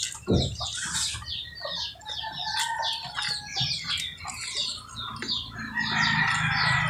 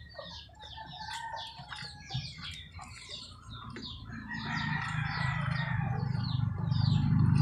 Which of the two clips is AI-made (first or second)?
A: second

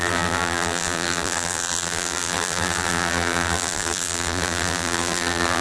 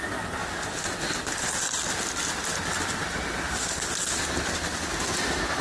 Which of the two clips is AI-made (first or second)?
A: first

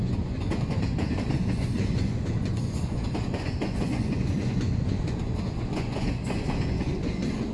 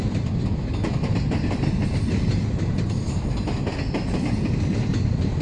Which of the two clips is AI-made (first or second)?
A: first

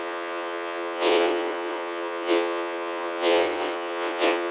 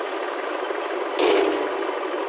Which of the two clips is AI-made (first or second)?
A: first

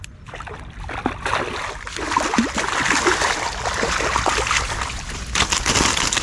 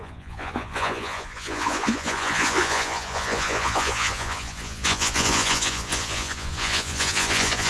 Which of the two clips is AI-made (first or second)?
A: second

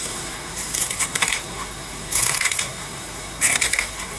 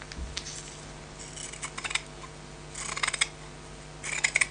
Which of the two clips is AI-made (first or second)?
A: first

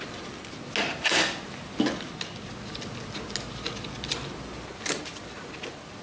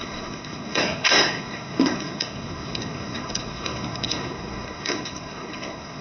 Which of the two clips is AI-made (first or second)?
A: second